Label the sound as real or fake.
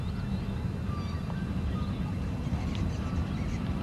real